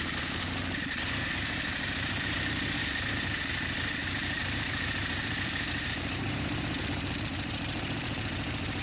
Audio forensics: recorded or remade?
remade